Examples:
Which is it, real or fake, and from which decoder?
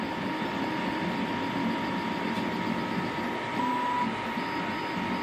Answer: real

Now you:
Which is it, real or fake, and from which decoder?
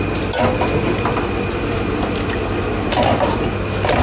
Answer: real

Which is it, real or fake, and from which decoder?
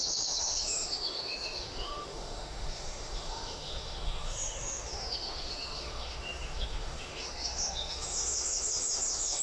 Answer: fake, autoencoder, DAC-VAE